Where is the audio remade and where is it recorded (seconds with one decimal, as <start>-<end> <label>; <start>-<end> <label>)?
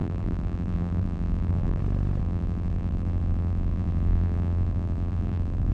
0.0-1.8 remade; 1.8-2.2 recorded; 2.2-5.7 remade